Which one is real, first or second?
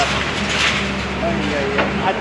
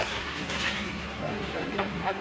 first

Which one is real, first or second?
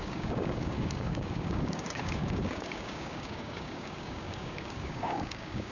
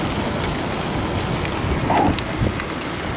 second